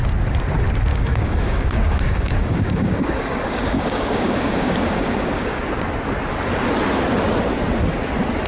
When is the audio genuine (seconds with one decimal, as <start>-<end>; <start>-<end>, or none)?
0.0-0.9; 5.6-8.5